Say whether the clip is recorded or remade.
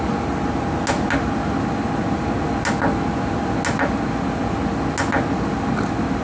recorded